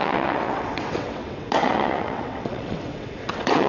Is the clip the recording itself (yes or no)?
no